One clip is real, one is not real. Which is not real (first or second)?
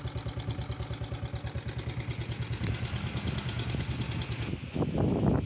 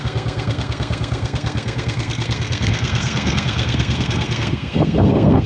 second